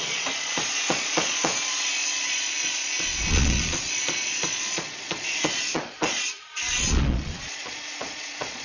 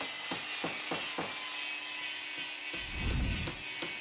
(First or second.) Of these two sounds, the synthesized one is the first